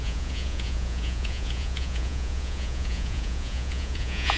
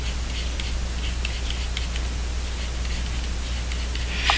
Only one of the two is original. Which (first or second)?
second